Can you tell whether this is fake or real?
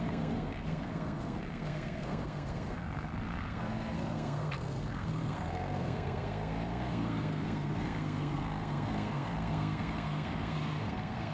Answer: fake